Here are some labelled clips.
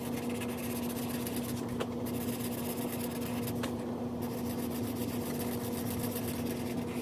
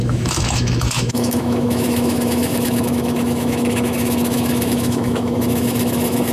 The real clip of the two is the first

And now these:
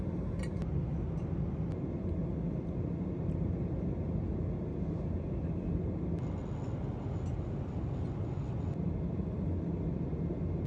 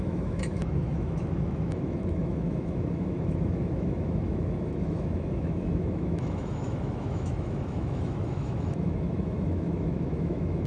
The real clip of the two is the first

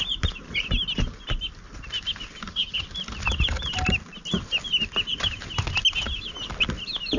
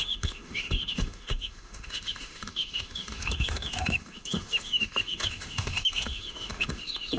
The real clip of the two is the first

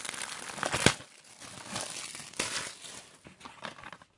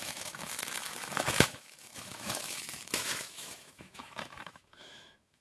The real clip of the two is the first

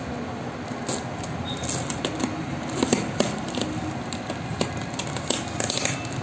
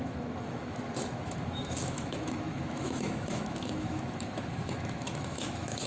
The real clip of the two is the first